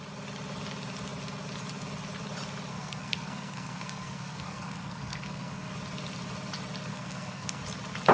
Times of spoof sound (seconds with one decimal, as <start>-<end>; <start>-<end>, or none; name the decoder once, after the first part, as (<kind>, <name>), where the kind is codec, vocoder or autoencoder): 2.7-5.7 (codec, SNAC); 6.9-7.6